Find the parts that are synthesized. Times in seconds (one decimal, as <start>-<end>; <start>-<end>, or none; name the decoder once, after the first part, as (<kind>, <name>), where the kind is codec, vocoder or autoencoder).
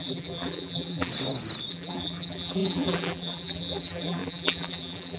0.0-1.1 (vocoder, BigVGAN v2); 1.7-5.2